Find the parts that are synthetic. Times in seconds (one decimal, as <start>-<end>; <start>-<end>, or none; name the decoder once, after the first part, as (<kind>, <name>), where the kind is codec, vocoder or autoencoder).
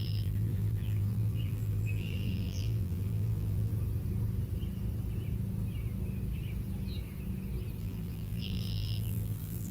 0.0-3.7 (vocoder, BigVGAN v2); 7.8-9.7